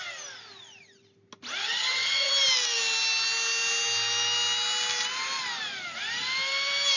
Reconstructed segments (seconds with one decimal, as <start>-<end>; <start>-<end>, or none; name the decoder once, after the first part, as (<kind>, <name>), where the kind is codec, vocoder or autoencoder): 1.6-2.3 (vocoder, HiFi-GAN)